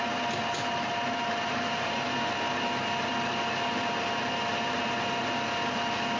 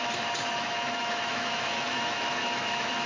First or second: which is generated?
second